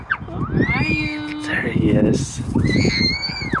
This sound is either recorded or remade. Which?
recorded